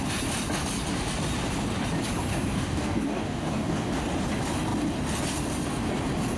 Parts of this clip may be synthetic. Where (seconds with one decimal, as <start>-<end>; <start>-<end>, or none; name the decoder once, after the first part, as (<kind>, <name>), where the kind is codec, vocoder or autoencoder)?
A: 2.3-3.9 (codec, DAC)